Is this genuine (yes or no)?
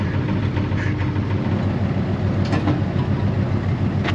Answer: yes